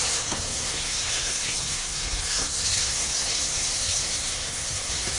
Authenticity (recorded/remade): remade